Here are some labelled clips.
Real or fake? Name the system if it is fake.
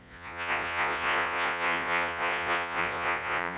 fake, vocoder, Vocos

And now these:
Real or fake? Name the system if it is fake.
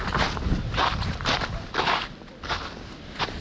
real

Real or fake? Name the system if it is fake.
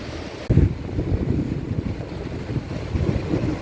real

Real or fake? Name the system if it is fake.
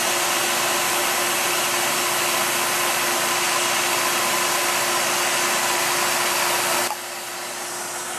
real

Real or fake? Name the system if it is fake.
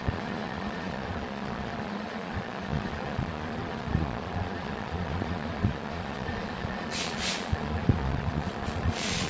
fake, vocoder, Vocos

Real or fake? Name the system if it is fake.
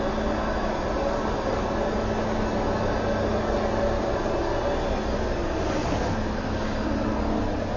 real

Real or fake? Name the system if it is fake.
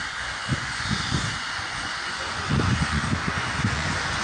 fake, vocoder, Vocos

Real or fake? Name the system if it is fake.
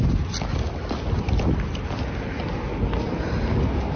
real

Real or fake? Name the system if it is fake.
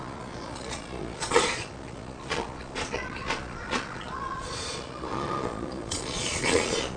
fake, vocoder, Vocos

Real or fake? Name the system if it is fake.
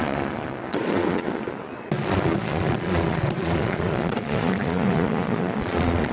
fake, vocoder, Vocos